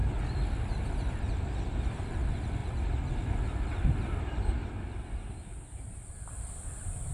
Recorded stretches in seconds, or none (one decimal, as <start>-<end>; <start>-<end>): none